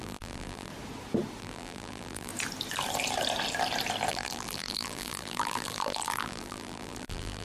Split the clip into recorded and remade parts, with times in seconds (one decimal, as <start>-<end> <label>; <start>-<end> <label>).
0.0-0.7 remade; 0.7-1.4 recorded; 1.4-2.3 remade; 2.3-4.1 recorded; 4.1-7.4 remade

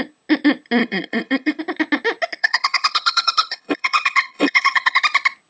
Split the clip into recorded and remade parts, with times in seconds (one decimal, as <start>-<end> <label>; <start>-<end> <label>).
0.0-0.8 recorded; 0.8-1.6 remade; 1.6-2.4 recorded; 2.4-5.0 remade; 5.0-5.5 recorded

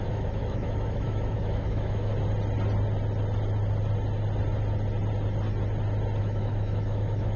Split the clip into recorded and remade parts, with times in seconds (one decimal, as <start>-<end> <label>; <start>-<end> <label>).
0.0-2.1 remade; 2.1-6.2 recorded; 6.2-7.4 remade